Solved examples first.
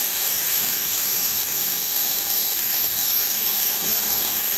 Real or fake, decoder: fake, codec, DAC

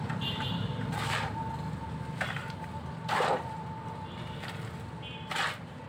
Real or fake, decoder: real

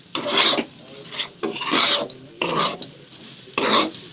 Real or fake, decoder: real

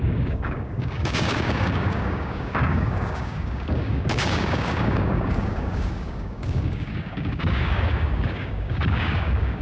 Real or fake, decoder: fake, codec, DAC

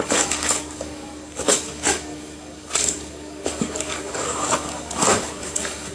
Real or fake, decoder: fake, codec, DAC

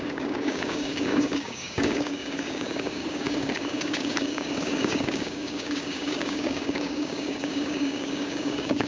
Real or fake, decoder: fake, codec, DAC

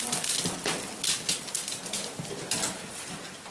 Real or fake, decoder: real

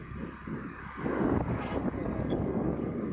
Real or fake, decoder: fake, codec, DAC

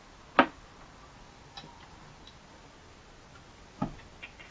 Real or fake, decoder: real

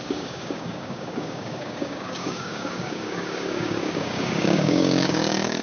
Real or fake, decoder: fake, codec, DAC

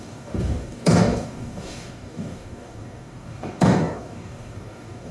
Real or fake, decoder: fake, codec, DAC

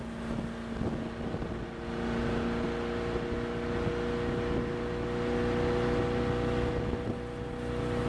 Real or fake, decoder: real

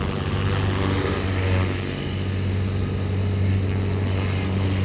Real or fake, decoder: real